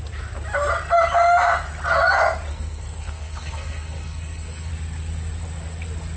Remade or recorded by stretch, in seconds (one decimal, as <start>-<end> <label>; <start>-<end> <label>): 0.0-2.5 recorded; 2.5-4.7 remade; 4.7-6.2 recorded